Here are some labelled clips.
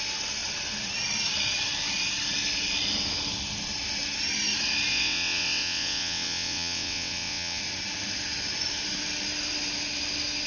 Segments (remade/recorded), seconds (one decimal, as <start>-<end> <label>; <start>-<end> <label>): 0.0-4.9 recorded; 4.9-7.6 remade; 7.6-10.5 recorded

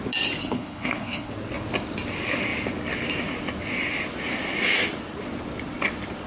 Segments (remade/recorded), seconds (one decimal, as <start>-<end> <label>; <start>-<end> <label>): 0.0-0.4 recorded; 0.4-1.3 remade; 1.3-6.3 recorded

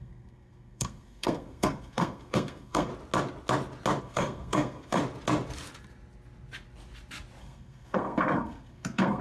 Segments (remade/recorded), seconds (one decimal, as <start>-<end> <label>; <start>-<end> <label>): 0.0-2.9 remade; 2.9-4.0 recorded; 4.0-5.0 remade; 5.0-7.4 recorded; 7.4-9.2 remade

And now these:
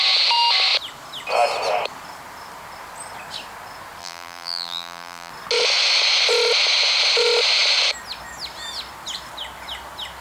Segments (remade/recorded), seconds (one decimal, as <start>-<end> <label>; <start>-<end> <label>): 0.0-4.0 recorded; 4.0-5.3 remade; 5.3-10.2 recorded

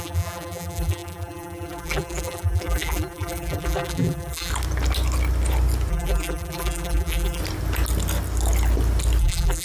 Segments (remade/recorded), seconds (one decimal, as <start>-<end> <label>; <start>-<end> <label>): 0.0-4.5 remade; 4.5-5.9 recorded; 5.9-7.4 remade; 7.4-9.2 recorded; 9.2-9.6 remade